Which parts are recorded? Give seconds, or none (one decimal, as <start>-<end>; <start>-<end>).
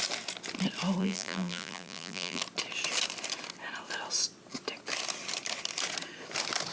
0.0-1.0; 2.4-6.7